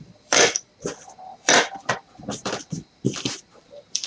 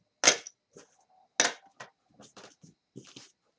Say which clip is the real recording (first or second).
second